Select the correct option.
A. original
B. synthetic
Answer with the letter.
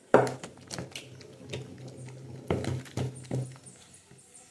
A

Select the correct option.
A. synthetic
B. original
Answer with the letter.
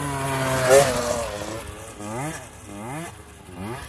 B